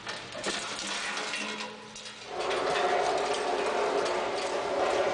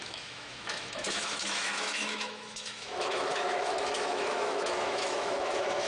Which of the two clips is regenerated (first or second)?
second